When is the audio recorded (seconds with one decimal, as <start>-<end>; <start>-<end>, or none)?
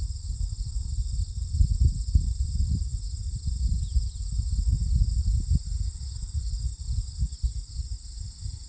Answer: 0.0-8.7